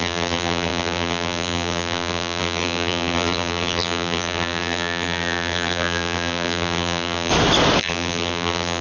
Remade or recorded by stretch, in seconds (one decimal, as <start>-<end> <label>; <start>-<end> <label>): 0.0-7.3 remade; 7.3-7.8 recorded; 7.8-8.8 remade